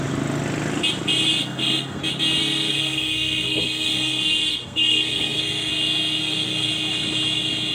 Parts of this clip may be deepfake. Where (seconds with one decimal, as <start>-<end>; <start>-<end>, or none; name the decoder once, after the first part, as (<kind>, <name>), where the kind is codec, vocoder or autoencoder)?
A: 1.4-2.0 (codec, SNAC); 2.4-5.7; 6.2-6.7

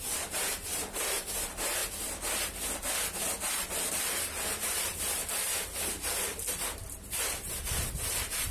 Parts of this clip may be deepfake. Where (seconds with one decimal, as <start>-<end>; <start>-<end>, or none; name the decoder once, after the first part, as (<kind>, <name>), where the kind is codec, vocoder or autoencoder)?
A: 0.0-1.8 (vocoder, BigVGAN v2); 3.9-5.2; 6.5-8.5

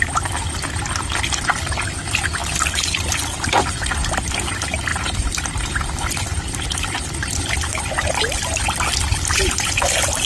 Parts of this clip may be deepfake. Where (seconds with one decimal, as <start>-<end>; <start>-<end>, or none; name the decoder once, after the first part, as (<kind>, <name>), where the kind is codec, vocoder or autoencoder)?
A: 2.4-4.1 (vocoder, BigVGAN v2); 4.9-6.1